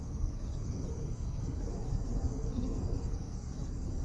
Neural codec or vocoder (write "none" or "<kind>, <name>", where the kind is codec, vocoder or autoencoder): codec, SNAC